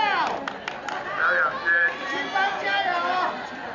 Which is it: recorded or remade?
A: recorded